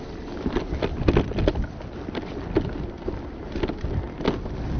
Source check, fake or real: real